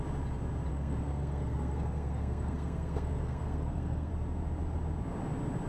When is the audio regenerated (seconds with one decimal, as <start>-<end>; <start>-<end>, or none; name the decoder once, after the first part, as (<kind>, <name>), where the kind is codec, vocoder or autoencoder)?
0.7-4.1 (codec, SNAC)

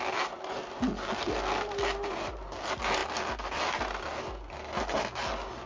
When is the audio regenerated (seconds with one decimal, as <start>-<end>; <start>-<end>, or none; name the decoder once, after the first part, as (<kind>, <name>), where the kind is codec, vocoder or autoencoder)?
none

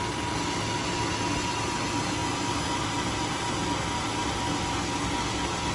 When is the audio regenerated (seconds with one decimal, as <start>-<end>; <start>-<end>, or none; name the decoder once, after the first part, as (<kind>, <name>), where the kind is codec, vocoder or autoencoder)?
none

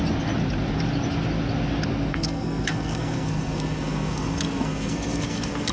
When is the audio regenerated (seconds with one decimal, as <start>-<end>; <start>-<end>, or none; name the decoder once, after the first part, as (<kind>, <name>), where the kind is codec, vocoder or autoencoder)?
2.1-5.7 (codec, SNAC)